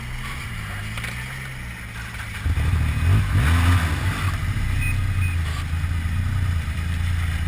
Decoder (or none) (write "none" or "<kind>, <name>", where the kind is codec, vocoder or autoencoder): none